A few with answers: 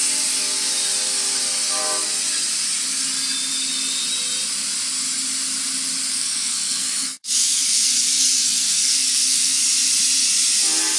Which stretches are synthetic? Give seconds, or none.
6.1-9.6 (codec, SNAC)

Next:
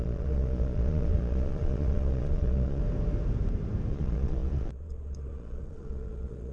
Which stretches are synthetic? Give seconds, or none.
0.0-2.8 (vocoder, Vocos); 3.9-6.5

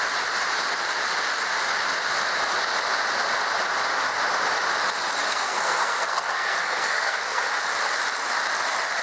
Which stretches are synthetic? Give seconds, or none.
5.3-7.5 (codec, SNAC)

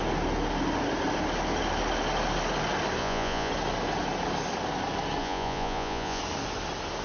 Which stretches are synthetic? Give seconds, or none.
3.0-3.5 (vocoder, Vocos); 5.2-6.2

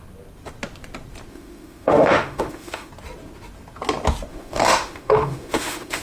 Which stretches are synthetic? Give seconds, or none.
1.3-2.9 (autoencoder, DAC-VAE); 4.3-6.0

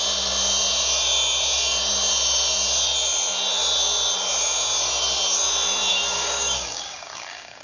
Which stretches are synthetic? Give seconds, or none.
5.9-7.6 (codec, DAC)

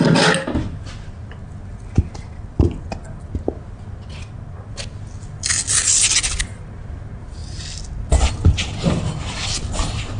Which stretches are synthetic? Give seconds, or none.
none